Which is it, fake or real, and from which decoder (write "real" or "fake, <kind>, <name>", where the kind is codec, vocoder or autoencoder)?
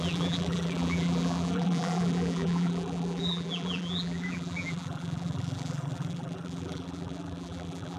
fake, vocoder, BigVGAN v2